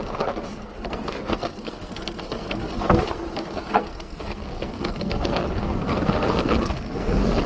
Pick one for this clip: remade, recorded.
remade